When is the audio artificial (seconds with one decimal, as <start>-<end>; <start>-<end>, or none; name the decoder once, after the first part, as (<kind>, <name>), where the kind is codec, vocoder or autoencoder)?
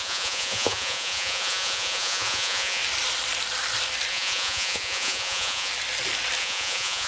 0.0-2.8 (vocoder, Vocos); 4.1-5.7; 6.4-7.1